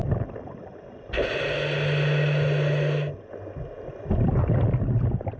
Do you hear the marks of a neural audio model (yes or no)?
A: no